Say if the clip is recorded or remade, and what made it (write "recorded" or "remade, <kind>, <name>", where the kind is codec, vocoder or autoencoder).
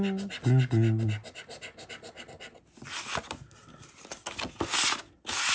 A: recorded